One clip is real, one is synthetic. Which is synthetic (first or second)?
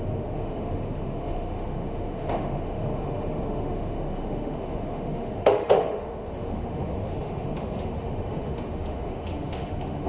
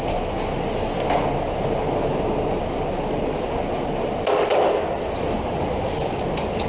first